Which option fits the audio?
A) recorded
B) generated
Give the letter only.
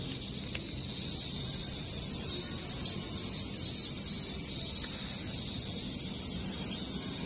A